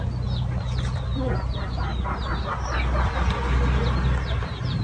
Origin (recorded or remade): recorded